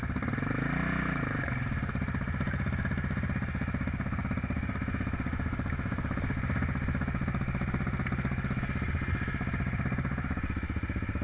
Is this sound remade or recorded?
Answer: recorded